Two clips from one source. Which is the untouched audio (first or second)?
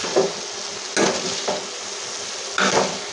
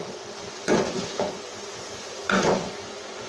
first